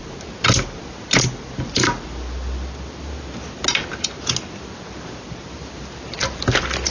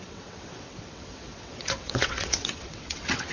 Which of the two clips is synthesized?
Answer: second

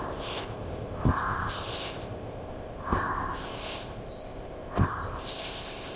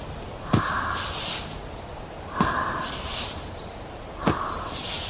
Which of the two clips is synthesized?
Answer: first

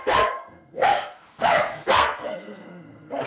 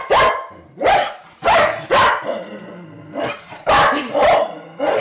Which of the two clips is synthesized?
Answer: first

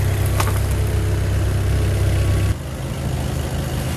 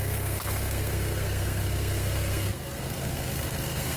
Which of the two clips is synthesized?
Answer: second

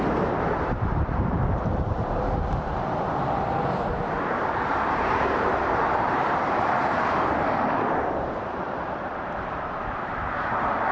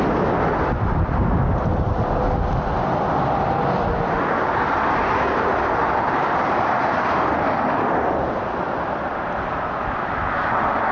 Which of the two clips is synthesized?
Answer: first